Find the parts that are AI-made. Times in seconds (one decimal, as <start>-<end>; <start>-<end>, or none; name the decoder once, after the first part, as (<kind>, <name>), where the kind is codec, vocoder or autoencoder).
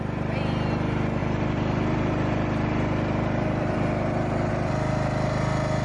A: 1.2-4.5 (vocoder, BigVGAN v2)